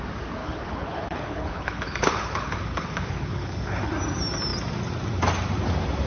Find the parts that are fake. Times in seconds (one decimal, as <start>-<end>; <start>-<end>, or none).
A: 0.4-3.9